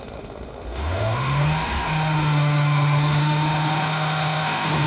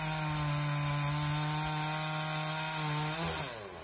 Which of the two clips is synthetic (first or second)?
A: first